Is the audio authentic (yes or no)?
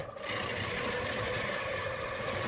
yes